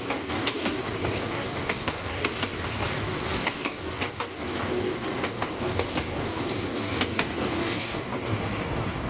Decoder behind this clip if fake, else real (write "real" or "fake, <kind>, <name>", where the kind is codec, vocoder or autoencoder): fake, codec, DAC